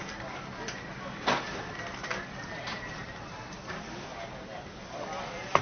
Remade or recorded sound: recorded